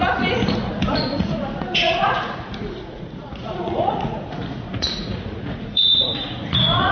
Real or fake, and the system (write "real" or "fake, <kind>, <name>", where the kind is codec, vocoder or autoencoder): fake, vocoder, Vocos